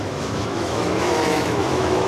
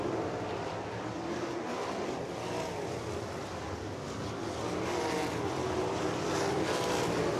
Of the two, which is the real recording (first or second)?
second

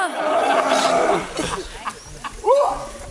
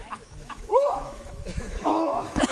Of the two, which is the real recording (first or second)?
first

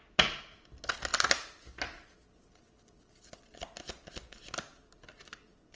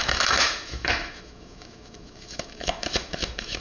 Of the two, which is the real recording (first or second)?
first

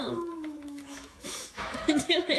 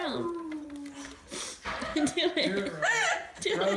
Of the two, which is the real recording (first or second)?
second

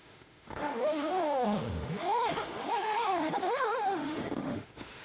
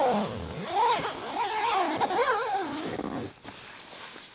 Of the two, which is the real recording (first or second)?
second